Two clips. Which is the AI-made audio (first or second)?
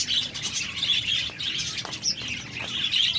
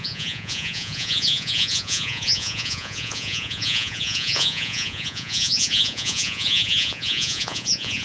second